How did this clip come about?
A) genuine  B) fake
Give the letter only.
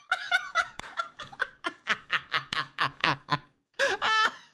B